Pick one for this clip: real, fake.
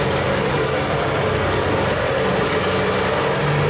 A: real